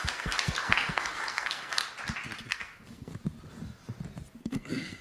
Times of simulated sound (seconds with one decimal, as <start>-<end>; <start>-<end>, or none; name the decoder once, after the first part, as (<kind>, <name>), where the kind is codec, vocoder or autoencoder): 0.0-1.8 (codec, SNAC); 2.5-3.1; 4.4-5.0